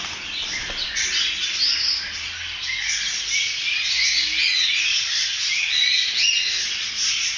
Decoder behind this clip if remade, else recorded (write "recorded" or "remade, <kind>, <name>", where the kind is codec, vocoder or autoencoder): recorded